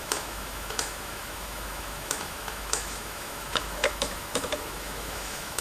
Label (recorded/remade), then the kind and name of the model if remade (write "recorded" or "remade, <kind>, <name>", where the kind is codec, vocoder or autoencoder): remade, autoencoder, DAC-VAE